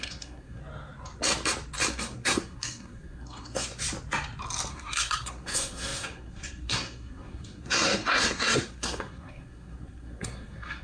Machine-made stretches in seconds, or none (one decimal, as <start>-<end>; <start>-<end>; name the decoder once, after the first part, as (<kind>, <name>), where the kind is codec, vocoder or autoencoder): 0.0-0.6 (codec, SNAC); 1.9-3.8; 4.7-10.8